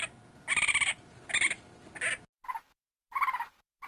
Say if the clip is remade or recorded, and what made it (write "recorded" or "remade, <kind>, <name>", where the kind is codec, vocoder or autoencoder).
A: recorded